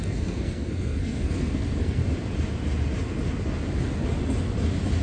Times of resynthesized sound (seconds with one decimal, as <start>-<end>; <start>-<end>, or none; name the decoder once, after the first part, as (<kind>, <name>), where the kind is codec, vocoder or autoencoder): 0.0-2.0 (codec, SNAC)